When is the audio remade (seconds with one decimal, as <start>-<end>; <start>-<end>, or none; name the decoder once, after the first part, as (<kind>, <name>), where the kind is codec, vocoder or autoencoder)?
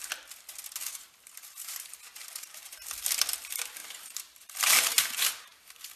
0.8-2.9 (vocoder, BigVGAN v2); 3.8-6.0